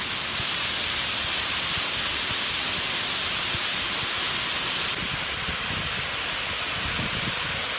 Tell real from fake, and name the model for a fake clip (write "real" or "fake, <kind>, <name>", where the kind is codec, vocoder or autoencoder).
real